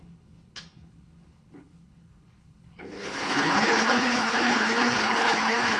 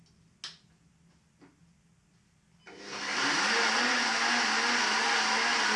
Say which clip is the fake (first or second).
first